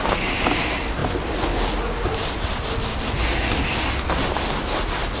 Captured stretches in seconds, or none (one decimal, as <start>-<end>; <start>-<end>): 0.0-5.2

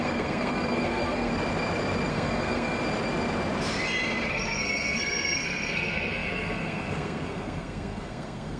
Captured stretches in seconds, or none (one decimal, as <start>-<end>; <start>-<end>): 1.3-2.1; 2.8-4.3

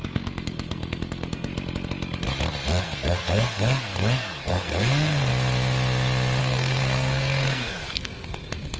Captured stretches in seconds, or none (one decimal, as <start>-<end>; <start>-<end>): 1.5-2.8; 5.3-6.4

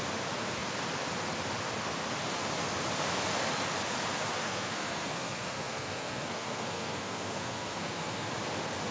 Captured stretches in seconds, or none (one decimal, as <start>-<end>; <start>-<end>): 0.0-4.3; 8.3-8.9

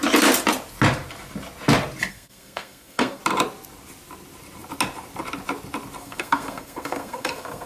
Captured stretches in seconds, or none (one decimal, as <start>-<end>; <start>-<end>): 0.0-2.1; 3.2-6.0